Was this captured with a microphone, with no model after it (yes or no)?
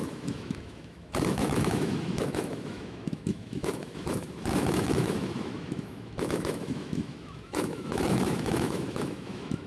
no